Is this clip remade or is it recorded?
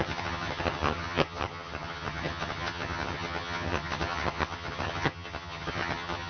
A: remade